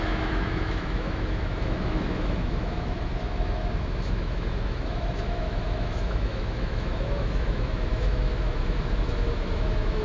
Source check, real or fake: fake